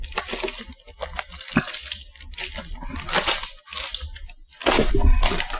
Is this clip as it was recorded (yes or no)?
yes